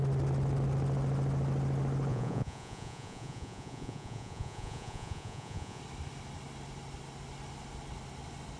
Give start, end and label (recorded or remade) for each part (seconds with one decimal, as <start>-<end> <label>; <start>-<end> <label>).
0.0-2.1 recorded; 2.1-5.8 remade; 5.8-8.6 recorded